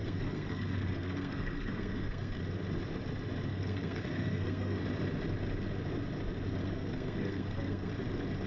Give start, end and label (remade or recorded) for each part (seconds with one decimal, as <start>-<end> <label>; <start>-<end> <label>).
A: 0.0-2.4 remade; 2.4-3.5 recorded; 3.5-4.8 remade; 4.8-6.6 recorded; 6.6-7.9 remade; 7.9-8.5 recorded